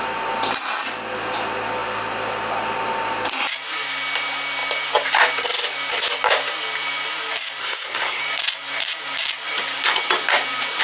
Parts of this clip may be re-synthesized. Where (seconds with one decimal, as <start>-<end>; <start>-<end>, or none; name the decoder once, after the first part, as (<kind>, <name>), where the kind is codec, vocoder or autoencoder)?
7.6-8.2 (codec, SNAC)